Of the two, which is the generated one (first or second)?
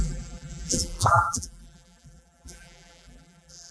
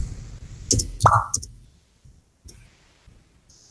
first